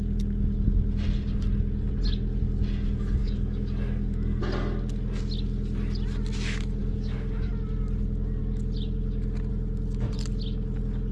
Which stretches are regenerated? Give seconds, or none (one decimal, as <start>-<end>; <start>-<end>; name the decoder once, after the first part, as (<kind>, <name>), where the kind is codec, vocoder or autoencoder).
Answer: 3.2-4.4 (codec, DAC); 6.8-7.5

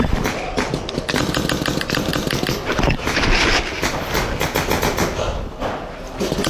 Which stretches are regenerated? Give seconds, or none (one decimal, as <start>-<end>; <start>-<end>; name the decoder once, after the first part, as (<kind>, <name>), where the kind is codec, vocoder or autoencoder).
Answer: none

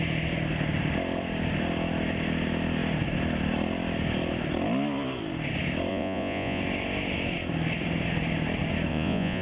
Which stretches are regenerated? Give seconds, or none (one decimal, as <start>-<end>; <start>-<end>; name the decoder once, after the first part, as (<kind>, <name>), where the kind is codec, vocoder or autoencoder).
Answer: 5.9-6.6 (vocoder, Vocos); 8.9-9.4